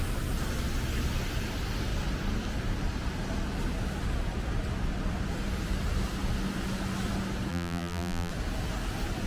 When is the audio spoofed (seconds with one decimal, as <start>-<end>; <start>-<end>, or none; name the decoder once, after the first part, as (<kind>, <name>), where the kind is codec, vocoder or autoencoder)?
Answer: 7.5-8.3 (vocoder, BigVGAN v2)